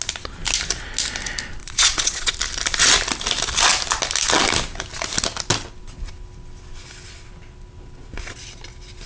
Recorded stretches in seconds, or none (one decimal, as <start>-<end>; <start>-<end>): 0.0-1.6; 2.3-9.1

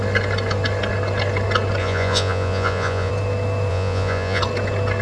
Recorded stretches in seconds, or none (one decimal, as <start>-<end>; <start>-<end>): 0.0-1.8; 3.1-3.7; 4.4-5.0

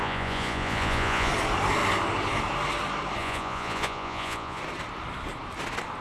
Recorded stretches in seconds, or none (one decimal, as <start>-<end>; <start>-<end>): 1.3-3.2; 4.6-6.0

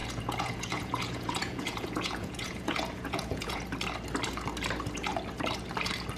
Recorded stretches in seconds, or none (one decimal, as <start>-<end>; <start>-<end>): 3.6-6.2

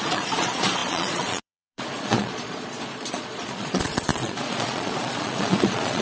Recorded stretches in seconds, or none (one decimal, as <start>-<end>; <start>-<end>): none

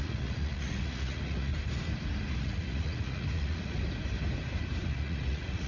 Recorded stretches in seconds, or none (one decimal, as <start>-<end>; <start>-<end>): 1.5-2.4; 3.8-4.8

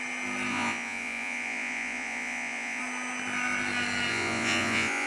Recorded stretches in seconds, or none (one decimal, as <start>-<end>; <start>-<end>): 0.0-0.5; 2.8-4.1

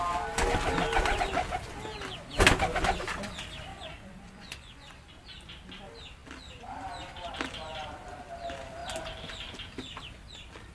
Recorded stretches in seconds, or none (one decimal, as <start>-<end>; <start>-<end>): 0.0-3.7; 5.1-10.7